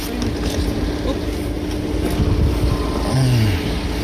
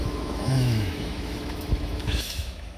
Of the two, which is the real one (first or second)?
first